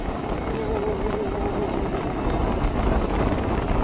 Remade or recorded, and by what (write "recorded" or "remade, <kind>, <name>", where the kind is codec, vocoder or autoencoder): recorded